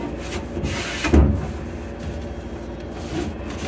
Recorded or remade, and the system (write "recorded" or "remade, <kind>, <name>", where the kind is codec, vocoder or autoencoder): recorded